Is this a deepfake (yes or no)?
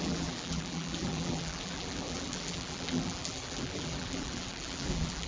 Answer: yes